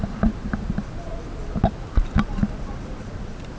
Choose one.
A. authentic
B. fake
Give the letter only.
A